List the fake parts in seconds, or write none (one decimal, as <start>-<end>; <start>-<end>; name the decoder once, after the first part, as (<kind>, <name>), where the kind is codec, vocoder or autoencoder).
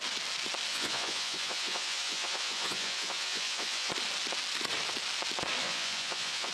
0.7-3.9 (vocoder, Vocos); 5.6-6.5